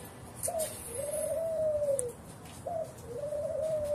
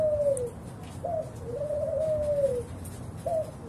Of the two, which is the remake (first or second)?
first